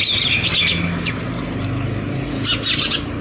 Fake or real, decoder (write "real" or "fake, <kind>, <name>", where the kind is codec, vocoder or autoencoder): real